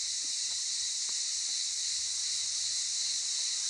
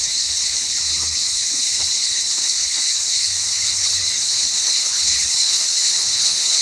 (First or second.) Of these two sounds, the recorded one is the first